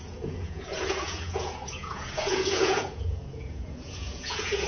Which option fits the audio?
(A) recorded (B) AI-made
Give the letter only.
B